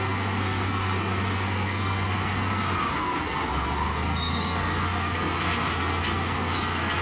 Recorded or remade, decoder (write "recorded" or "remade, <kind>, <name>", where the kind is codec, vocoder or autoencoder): remade, codec, SNAC